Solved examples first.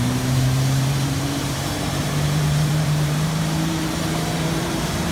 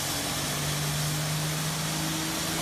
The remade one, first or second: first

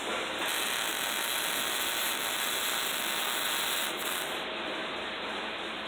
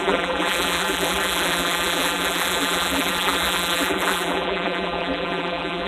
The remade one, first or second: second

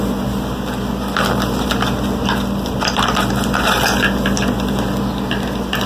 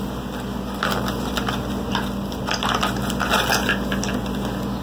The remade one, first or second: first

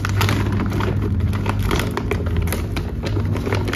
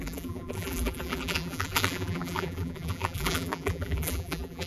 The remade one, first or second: second